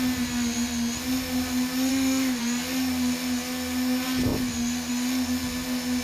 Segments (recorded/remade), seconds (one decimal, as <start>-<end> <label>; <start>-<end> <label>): 0.0-1.9 recorded; 1.9-2.4 remade; 2.4-6.0 recorded

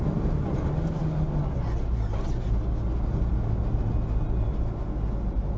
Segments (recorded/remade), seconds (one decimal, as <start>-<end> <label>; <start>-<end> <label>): 0.0-5.6 recorded

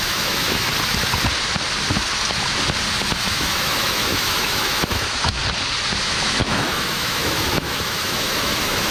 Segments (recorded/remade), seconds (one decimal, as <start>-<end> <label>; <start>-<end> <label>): 0.0-0.7 remade; 0.7-3.2 recorded; 3.2-5.4 remade; 5.4-6.0 recorded; 6.0-8.9 remade

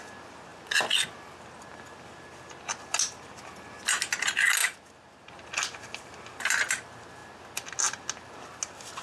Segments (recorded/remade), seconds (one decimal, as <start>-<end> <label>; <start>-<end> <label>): 0.0-9.0 recorded

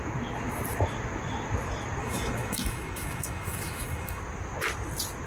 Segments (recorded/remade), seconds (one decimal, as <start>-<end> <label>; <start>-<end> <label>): 0.0-2.0 recorded; 2.0-4.2 remade; 4.2-5.3 recorded

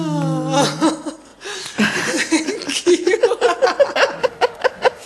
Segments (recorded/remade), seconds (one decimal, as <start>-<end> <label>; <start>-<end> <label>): 0.0-4.2 recorded; 4.2-5.1 remade

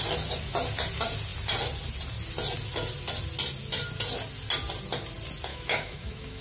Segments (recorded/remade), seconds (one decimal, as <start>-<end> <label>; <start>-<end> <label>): 0.0-5.5 recorded; 5.5-6.4 remade